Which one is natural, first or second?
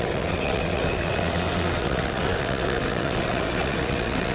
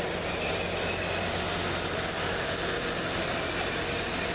second